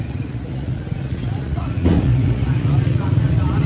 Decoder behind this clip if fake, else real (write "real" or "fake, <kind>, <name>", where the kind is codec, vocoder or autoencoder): fake, vocoder, Vocos